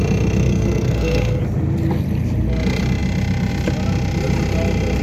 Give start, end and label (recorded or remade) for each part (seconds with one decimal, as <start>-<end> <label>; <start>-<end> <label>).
0.0-0.5 recorded; 0.5-1.4 remade; 1.4-5.0 recorded